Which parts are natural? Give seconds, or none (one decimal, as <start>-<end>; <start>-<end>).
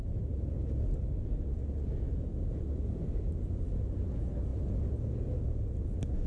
0.0-6.3